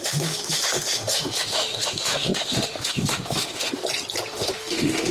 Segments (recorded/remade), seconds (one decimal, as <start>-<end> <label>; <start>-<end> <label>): 0.0-3.7 remade; 3.7-4.3 recorded; 4.3-5.1 remade